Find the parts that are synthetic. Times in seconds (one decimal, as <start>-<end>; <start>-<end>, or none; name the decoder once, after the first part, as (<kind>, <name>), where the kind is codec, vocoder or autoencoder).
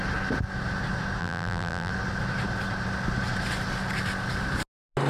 1.2-1.9 (vocoder, BigVGAN v2)